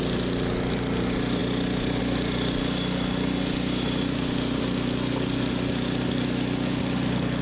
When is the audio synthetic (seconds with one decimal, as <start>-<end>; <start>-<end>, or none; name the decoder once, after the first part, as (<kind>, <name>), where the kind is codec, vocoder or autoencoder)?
none